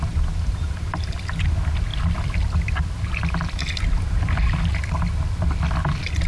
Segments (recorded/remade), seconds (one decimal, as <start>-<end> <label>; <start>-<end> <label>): 0.0-6.3 recorded